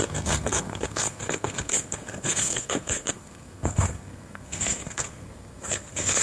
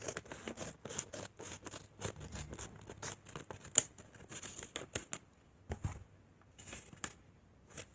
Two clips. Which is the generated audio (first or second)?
first